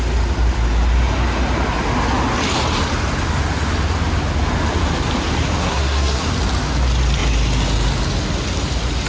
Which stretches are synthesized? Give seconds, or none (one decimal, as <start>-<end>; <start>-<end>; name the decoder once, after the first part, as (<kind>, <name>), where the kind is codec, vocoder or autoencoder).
5.6-6.3 (codec, SNAC)

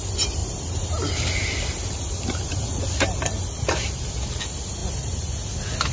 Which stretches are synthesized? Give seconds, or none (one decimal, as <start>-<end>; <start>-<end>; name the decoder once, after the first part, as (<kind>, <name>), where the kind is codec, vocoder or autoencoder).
0.4-3.9 (vocoder, BigVGAN v2); 4.8-5.3

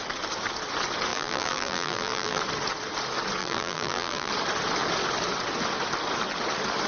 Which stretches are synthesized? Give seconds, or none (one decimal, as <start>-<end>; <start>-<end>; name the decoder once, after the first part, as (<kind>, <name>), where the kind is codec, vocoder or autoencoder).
1.1-2.4 (vocoder, BigVGAN v2); 3.4-4.3

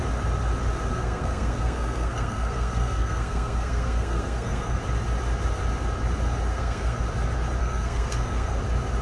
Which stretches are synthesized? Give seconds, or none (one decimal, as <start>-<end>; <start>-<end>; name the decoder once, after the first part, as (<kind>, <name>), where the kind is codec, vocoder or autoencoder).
0.9-4.8 (codec, SNAC); 6.5-7.0; 7.6-8.6